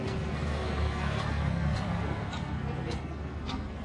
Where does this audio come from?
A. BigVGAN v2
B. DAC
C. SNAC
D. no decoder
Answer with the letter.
C